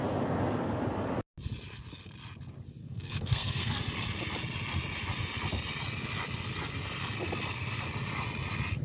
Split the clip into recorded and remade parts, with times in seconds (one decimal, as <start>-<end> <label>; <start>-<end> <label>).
0.0-2.8 recorded; 2.8-3.8 remade; 3.8-8.8 recorded